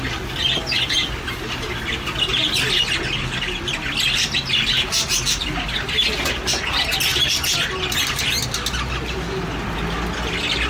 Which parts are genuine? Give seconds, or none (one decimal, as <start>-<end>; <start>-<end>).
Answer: 0.0-10.7